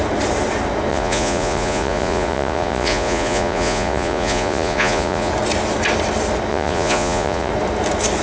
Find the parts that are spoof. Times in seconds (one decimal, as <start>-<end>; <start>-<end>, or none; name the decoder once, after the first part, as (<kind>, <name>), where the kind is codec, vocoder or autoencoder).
0.9-5.3 (vocoder, Vocos); 6.5-7.5